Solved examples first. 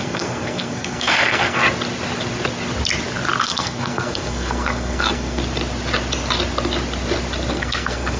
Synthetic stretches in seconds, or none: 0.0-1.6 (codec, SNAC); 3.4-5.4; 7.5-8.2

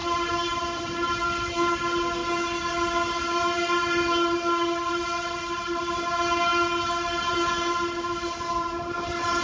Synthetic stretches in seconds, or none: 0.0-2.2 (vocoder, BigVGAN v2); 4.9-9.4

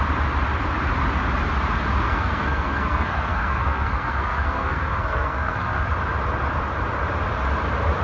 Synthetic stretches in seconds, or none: 2.0-5.9 (codec, SNAC)

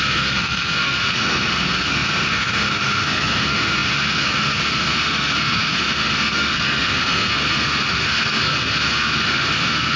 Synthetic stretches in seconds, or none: 0.0-10.0 (codec, SNAC)

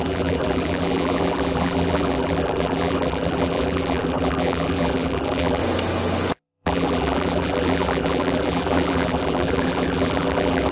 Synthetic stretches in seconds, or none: 0.0-5.6 (vocoder, BigVGAN v2); 6.3-10.7

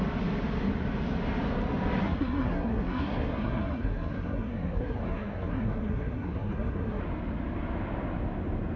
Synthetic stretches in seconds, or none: 2.0-7.0 (codec, SNAC)